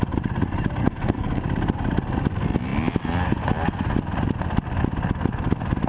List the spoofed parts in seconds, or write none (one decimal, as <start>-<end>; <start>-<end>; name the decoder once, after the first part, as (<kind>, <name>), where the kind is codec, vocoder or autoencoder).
0.8-1.4 (codec, SNAC)